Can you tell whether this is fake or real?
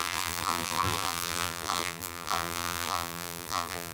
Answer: fake